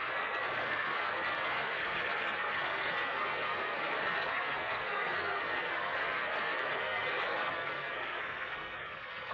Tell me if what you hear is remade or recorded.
remade